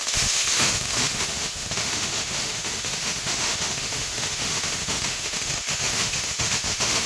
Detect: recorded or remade remade